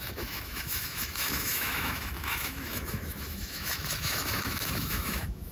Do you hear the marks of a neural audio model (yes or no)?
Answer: yes